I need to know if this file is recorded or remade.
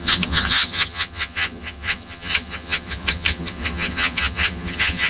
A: remade